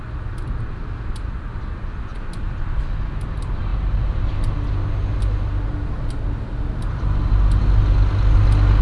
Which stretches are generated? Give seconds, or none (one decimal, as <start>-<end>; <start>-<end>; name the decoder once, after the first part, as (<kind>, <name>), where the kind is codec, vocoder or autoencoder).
none